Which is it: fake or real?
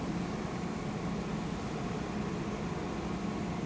real